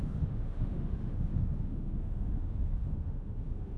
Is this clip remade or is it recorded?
remade